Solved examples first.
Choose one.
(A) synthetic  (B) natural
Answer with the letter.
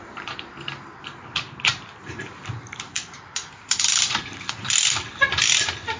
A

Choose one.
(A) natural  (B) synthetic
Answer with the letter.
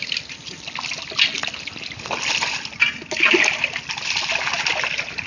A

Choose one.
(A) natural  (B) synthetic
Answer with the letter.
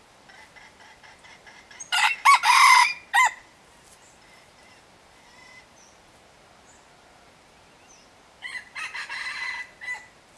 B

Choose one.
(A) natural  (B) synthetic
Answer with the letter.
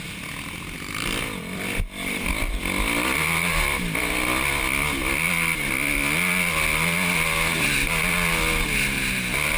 A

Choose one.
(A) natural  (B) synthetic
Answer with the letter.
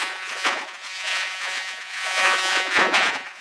B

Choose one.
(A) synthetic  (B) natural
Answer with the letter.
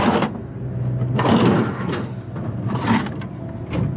B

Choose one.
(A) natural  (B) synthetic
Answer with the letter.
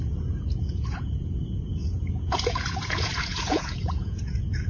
B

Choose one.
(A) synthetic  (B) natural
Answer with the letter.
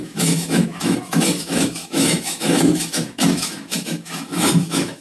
A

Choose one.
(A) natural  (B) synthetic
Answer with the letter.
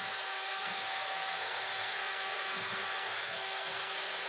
B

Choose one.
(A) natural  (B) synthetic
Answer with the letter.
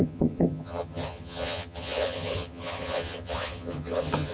B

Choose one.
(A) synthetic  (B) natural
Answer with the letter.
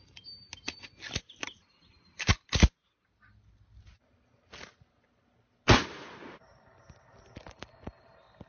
B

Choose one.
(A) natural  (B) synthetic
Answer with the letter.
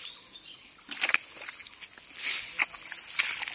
A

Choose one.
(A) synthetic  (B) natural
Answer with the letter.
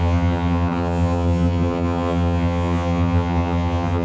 A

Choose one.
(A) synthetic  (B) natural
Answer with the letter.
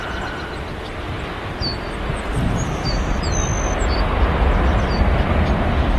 B